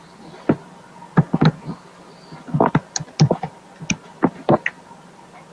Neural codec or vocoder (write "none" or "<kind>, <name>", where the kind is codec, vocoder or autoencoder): none